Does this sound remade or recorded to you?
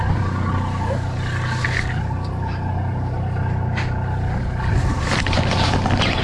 recorded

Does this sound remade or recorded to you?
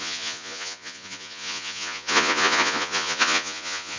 remade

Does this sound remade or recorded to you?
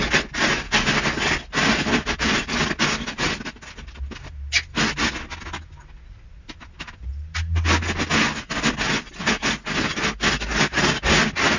recorded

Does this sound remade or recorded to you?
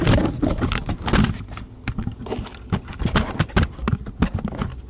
recorded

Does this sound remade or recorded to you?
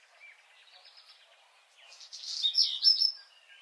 recorded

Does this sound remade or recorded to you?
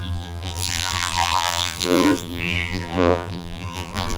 remade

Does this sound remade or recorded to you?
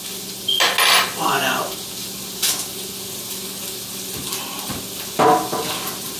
recorded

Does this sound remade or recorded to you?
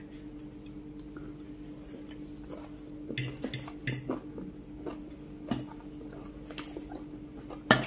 recorded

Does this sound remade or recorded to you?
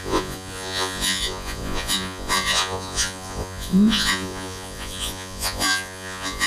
remade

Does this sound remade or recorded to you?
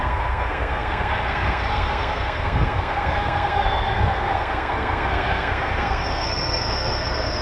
remade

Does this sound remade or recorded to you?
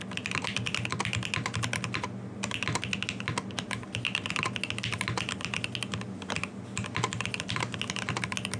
recorded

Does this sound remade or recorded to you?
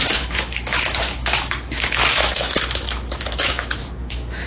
remade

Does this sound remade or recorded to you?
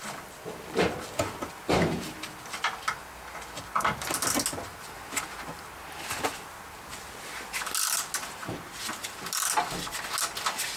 recorded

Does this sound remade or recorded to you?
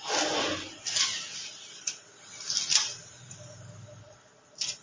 recorded